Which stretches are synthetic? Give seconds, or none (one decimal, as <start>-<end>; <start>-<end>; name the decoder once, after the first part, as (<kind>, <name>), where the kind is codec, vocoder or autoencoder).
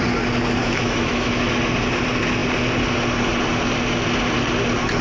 0.6-1.3 (autoencoder, DAC-VAE)